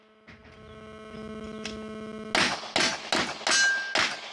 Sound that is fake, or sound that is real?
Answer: real